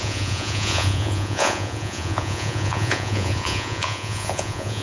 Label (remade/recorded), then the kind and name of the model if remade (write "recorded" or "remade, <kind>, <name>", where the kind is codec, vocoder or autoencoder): remade, vocoder, Vocos